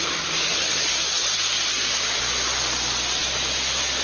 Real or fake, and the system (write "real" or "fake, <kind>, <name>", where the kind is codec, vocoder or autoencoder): real